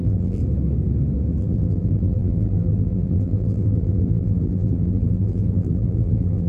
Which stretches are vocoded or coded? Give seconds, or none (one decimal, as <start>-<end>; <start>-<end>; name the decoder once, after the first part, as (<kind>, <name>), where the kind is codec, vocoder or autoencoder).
0.0-0.4 (vocoder, BigVGAN v2); 1.4-6.5